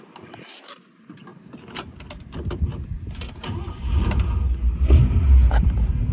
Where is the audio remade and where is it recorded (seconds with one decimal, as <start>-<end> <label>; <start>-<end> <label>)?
0.0-6.1 remade